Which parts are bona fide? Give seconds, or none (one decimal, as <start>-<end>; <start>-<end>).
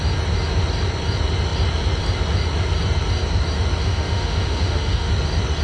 0.0-3.8; 5.1-5.6